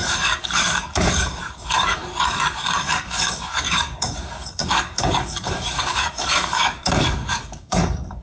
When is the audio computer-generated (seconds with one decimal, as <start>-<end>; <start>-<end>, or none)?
0.0-8.2